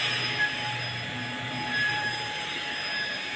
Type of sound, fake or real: fake